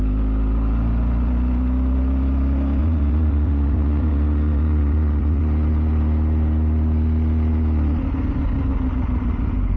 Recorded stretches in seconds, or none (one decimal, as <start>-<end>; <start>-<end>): 0.0-2.8; 5.4-9.8